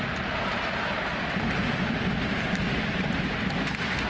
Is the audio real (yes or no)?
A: yes